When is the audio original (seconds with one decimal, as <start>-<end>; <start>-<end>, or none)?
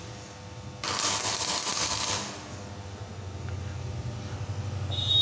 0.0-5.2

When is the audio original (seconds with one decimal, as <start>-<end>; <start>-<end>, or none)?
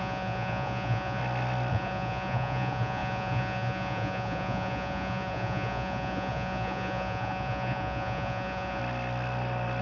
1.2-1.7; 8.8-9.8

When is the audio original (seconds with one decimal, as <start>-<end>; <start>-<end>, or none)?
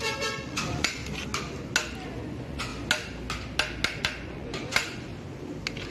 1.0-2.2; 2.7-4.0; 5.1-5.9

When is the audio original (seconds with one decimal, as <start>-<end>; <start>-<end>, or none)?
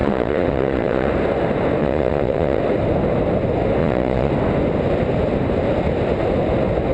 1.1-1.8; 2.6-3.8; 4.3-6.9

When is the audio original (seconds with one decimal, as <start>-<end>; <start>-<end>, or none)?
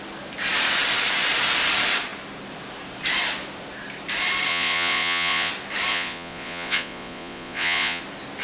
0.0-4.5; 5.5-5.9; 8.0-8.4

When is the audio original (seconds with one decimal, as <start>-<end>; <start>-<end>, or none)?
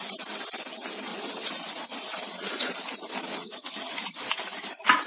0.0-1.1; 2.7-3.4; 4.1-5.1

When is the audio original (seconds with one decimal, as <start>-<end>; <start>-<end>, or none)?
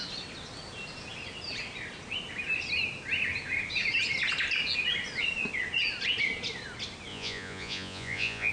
0.0-7.1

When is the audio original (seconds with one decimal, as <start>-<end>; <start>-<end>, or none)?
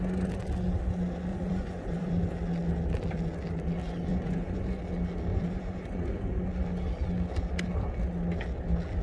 0.0-1.3; 2.1-4.1; 4.8-5.3; 6.5-9.0